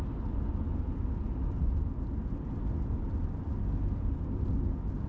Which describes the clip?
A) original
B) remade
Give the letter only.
A